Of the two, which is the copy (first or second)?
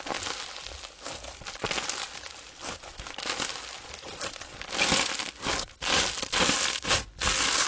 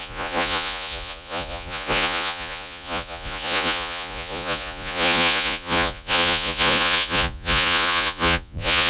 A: second